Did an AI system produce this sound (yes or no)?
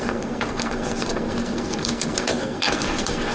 yes